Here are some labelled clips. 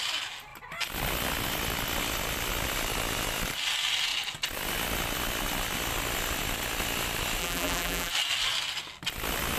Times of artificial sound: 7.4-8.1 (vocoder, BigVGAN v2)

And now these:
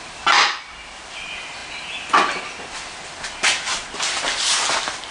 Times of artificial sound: none